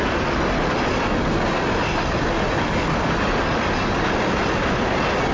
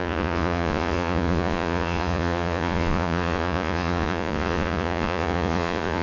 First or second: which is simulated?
second